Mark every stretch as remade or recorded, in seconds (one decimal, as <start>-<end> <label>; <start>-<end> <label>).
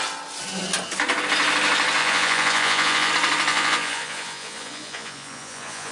0.0-2.0 recorded; 2.0-3.1 remade; 3.1-3.5 recorded; 3.5-5.9 remade